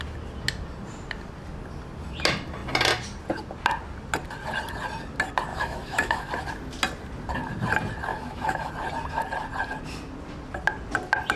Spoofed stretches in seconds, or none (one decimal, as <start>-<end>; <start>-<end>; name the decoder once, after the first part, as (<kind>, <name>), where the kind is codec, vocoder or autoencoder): 5.5-6.3 (autoencoder, DAC-VAE); 8.1-8.7